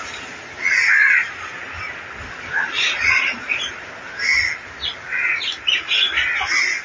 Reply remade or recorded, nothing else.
recorded